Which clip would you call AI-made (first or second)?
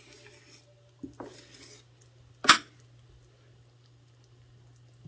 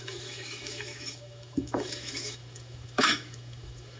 second